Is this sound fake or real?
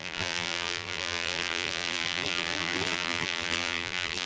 fake